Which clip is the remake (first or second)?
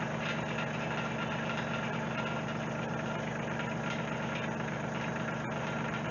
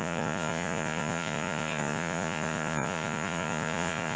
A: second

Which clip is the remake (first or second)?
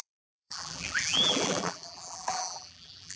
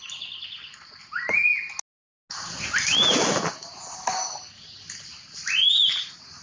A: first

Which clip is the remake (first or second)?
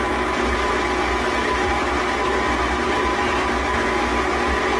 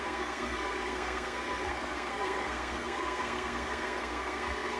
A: second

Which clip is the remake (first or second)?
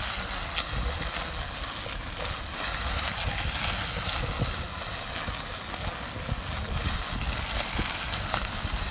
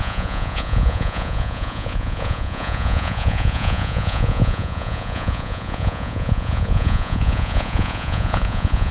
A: second